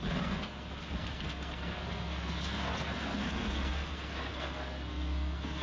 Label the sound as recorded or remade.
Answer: remade